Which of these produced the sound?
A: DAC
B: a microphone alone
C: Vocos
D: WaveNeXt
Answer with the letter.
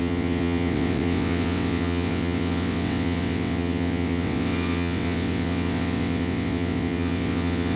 D